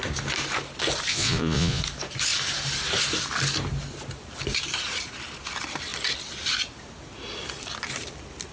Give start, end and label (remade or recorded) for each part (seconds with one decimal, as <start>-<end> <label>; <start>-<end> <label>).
0.0-1.1 recorded; 1.1-1.8 remade; 1.8-8.5 recorded